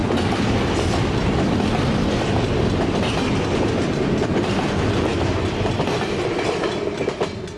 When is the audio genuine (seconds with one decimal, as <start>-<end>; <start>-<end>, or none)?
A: 0.0-7.6